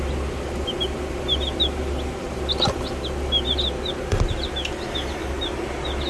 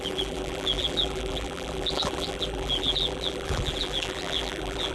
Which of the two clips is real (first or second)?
first